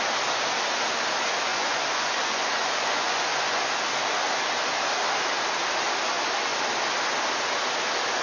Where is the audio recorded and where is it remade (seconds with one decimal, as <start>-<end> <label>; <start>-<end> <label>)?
0.0-1.5 recorded; 1.5-3.6 remade; 3.6-8.2 recorded